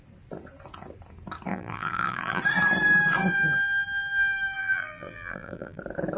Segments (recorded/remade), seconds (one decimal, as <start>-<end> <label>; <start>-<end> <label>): 0.0-1.5 recorded; 1.5-2.4 remade; 2.4-4.6 recorded; 4.6-5.8 remade; 5.8-6.2 recorded